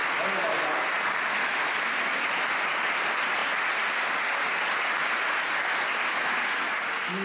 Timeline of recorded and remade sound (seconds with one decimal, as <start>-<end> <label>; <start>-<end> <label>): 0.0-7.2 recorded